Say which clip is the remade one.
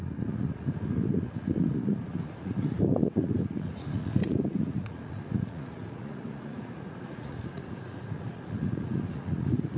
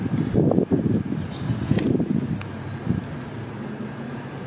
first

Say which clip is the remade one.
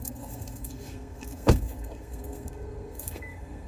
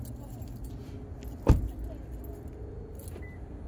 first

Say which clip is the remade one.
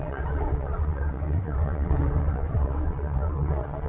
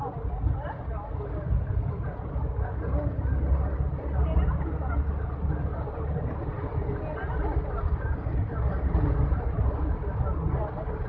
first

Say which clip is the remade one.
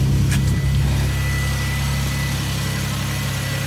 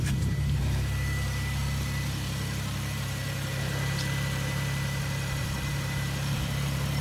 second